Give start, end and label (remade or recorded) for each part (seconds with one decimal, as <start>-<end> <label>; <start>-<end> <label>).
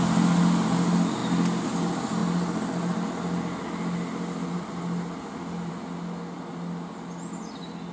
0.0-7.9 recorded